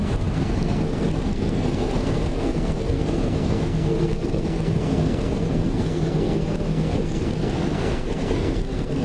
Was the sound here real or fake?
fake